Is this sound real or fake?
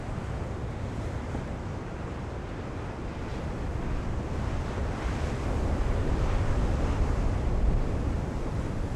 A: real